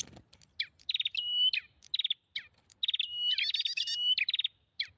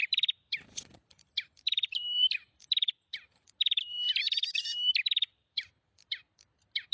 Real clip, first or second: first